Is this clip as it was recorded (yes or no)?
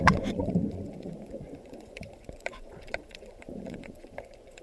no